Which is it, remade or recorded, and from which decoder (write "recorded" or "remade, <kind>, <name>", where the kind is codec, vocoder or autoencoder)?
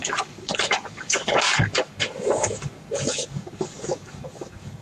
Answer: remade, codec, DAC